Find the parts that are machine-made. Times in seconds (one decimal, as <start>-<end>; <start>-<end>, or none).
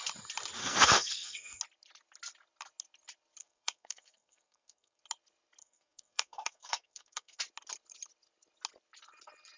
0.6-1.6; 3.4-5.0; 5.6-7.4